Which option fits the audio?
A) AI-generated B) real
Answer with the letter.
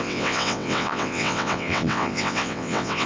A